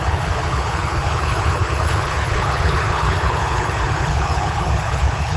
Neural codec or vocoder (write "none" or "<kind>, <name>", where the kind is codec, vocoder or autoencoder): codec, HILCodec